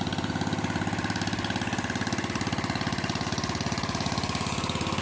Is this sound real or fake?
real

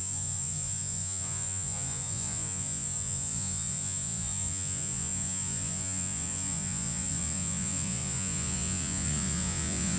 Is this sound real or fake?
fake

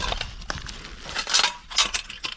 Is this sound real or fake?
real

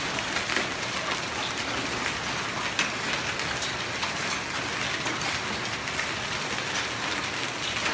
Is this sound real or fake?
real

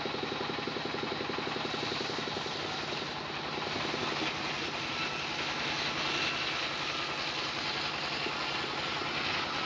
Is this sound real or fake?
real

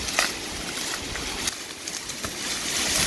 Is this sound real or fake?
real